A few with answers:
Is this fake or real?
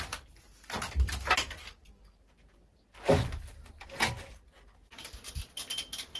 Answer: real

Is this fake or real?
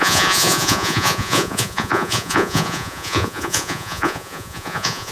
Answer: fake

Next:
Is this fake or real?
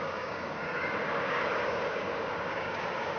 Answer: fake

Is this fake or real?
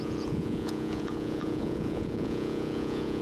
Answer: fake